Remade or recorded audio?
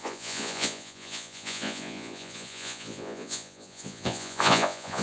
remade